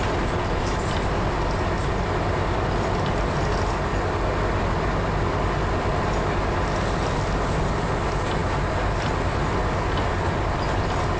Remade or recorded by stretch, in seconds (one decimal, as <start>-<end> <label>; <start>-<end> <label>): 0.0-11.2 recorded

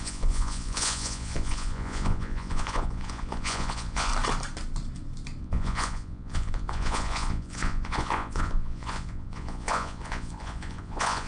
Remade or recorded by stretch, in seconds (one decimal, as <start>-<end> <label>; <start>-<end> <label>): 0.0-4.1 remade; 4.1-5.4 recorded; 5.4-11.3 remade